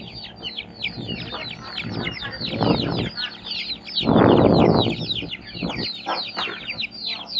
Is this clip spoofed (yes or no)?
no